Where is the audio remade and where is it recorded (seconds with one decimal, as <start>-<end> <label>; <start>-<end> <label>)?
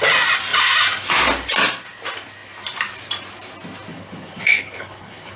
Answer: 0.0-3.9 recorded; 3.9-5.4 remade